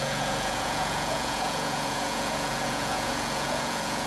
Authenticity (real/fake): fake